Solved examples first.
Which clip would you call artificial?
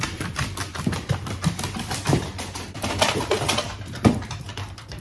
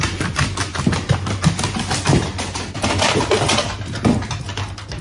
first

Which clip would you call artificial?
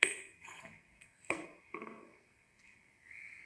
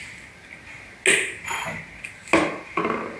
first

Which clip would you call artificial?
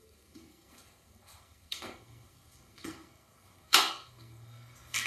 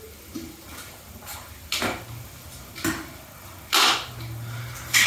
first